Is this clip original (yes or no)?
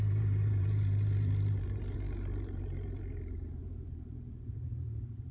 no